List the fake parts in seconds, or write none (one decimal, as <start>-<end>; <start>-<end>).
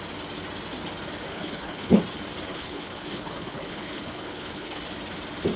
1.3-2.0; 2.5-4.8